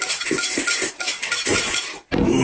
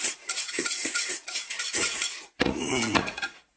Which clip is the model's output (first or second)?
second